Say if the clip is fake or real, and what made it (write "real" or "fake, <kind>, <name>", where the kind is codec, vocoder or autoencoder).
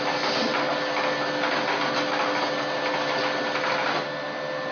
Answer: real